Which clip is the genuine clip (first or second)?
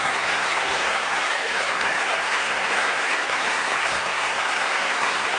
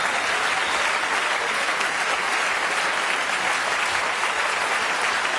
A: second